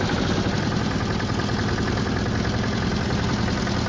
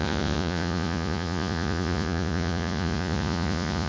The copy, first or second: second